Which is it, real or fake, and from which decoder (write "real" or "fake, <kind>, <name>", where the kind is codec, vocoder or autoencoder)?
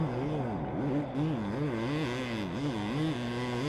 real